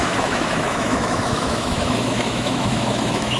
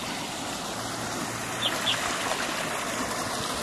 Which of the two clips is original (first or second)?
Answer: second